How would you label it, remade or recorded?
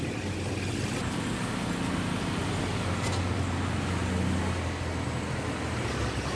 recorded